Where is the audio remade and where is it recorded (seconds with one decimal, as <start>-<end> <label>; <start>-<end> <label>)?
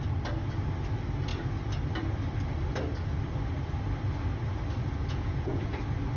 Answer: 0.0-5.0 recorded; 5.0-5.8 remade; 5.8-6.2 recorded